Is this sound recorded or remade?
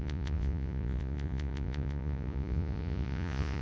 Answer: remade